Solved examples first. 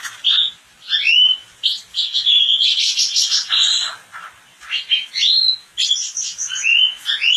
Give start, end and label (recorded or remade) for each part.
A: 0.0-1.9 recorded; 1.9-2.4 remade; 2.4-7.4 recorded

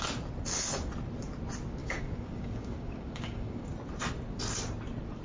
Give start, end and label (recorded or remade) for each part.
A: 0.0-1.8 recorded; 1.8-3.7 remade; 3.7-5.2 recorded

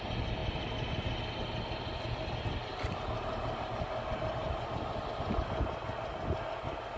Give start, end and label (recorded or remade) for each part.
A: 0.0-7.0 recorded

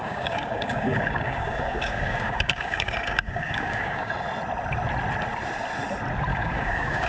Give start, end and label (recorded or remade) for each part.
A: 0.0-4.1 remade; 4.1-6.3 recorded; 6.3-7.1 remade

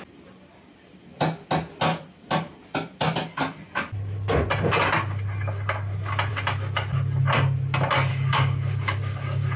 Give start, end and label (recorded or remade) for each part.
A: 0.0-8.1 recorded; 8.1-9.6 remade

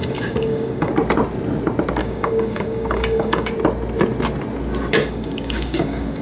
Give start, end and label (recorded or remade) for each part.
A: 0.0-0.9 remade; 0.9-2.0 recorded; 2.0-3.5 remade; 3.5-5.0 recorded; 5.0-6.2 remade